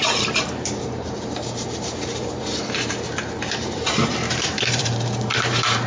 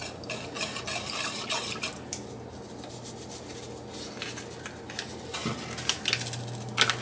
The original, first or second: second